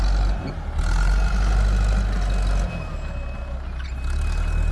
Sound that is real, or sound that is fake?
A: real